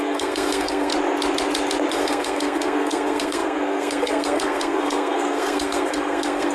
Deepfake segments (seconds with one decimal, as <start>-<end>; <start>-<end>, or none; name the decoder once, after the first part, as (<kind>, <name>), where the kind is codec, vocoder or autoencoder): 0.0-0.9 (codec, SNAC); 1.9-6.5